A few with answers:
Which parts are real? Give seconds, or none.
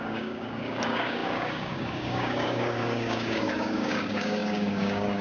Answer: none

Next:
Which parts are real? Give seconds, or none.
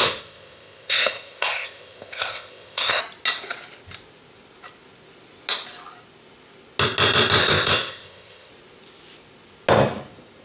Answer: 3.0-7.4; 8.5-10.4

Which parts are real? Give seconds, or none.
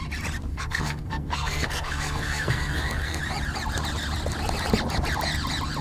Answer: 0.0-0.5; 3.2-5.8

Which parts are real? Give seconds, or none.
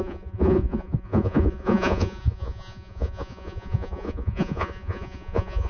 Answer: none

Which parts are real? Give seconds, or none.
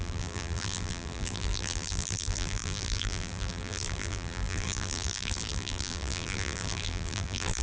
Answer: none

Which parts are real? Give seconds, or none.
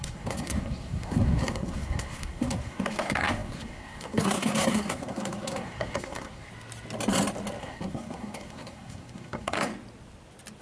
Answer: 6.5-7.6; 9.7-10.6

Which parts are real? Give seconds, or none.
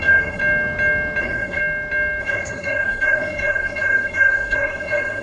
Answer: 0.4-1.2; 1.6-2.2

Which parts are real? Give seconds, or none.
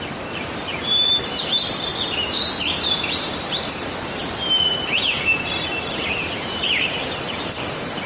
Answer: 1.9-2.8